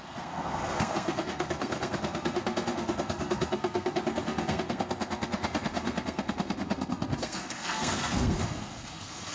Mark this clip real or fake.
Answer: fake